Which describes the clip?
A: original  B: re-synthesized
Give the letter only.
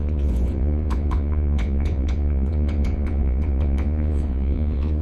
B